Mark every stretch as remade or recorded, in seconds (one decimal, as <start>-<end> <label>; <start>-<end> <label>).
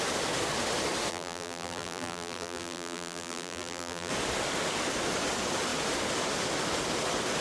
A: 0.0-1.1 recorded; 1.1-4.1 remade; 4.1-7.4 recorded